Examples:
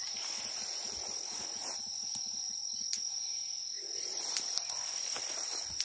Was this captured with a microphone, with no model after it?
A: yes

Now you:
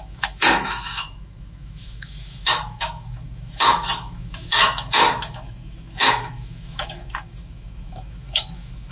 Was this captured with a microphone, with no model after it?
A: no